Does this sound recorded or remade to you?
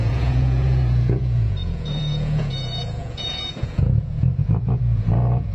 remade